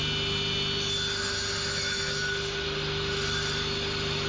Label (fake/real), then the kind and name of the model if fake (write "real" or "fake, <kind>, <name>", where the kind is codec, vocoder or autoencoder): real